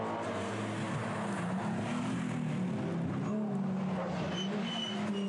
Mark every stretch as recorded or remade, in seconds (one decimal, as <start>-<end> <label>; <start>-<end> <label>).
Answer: 0.0-5.3 recorded

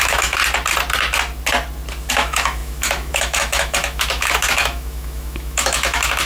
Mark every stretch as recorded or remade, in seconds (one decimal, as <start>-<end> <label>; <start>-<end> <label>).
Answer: 0.0-0.4 remade; 0.4-2.1 recorded; 2.1-6.3 remade

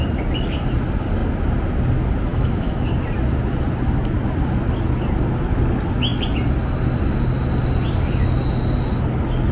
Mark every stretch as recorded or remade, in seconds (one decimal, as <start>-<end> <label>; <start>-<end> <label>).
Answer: 0.0-2.3 recorded; 2.3-2.9 remade; 2.9-9.5 recorded